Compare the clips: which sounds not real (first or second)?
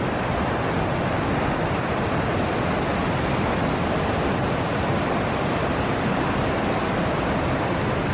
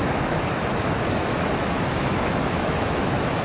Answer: second